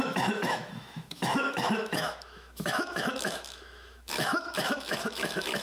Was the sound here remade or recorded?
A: remade